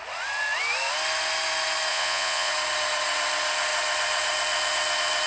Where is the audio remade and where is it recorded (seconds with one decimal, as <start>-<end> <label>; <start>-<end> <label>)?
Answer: 0.0-1.9 recorded; 1.9-2.5 remade; 2.5-5.3 recorded